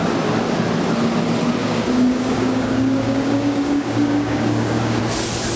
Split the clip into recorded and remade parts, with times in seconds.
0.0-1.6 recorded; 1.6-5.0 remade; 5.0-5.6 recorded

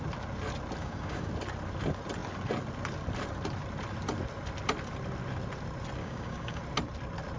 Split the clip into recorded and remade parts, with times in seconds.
0.0-0.8 recorded; 0.8-1.3 remade; 1.3-6.0 recorded; 6.0-6.6 remade; 6.6-7.4 recorded